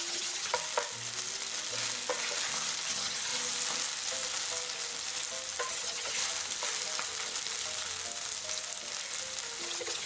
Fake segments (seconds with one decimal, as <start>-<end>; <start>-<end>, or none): 0.0-0.5; 2.9-3.3; 5.7-6.2; 9.6-10.1